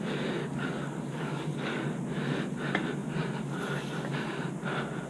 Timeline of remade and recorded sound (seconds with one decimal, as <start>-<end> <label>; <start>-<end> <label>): 0.0-0.4 recorded; 0.4-1.8 remade; 1.8-5.1 recorded